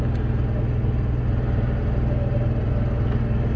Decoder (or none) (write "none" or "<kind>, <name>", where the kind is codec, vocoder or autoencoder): none